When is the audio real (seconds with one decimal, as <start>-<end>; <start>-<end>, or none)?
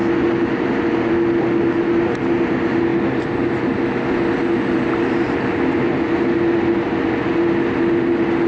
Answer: 0.0-8.5